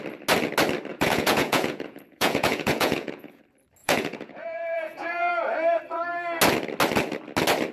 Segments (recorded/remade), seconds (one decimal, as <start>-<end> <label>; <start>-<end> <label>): 0.0-0.9 recorded; 0.9-3.4 remade; 3.4-3.8 recorded; 3.8-5.3 remade; 5.3-7.7 recorded